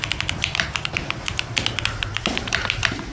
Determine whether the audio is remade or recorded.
recorded